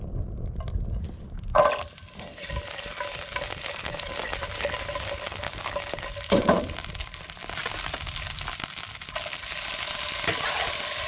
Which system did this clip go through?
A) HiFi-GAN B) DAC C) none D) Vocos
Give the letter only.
C